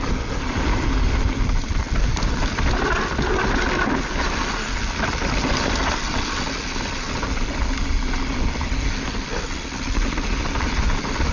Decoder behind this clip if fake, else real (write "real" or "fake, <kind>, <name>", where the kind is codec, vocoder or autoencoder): real